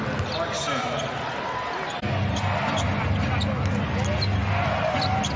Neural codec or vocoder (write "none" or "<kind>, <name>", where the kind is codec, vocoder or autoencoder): none